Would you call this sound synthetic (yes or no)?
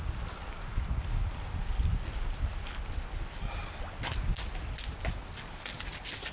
no